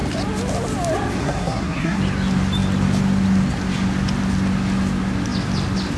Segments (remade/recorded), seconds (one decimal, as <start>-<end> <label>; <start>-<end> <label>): 0.0-1.2 recorded; 1.2-2.0 remade; 2.0-6.0 recorded